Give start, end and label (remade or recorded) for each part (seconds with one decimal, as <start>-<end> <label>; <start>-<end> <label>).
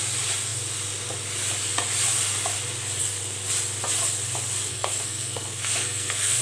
0.0-4.7 recorded; 4.7-6.4 remade